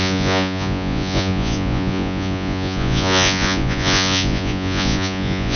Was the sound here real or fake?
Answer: fake